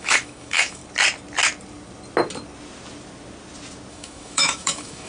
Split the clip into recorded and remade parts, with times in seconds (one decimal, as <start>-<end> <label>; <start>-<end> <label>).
0.0-0.8 remade; 0.8-3.9 recorded; 3.9-5.1 remade